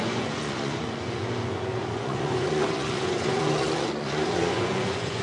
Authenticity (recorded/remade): remade